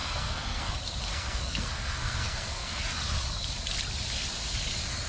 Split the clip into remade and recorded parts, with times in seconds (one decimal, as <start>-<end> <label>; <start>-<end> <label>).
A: 0.0-0.7 remade; 0.7-1.1 recorded; 1.1-2.8 remade; 2.8-5.1 recorded